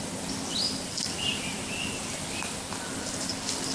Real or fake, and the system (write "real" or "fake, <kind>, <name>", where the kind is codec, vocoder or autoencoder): real